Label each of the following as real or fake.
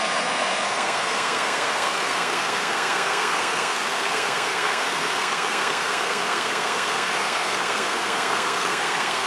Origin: fake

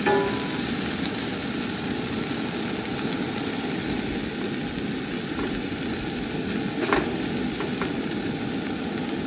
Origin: real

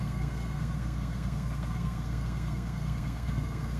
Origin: fake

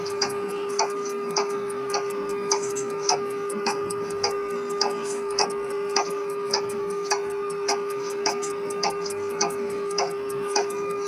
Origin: fake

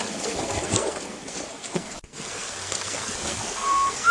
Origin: fake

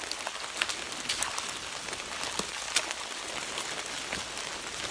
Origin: real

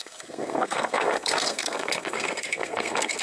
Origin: fake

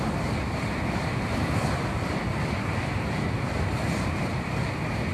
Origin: real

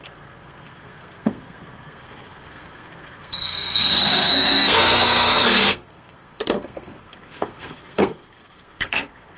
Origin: fake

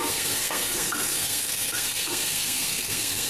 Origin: fake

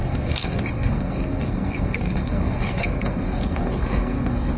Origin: fake